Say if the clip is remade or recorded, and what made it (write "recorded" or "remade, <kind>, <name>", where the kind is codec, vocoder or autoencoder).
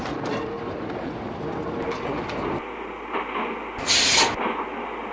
recorded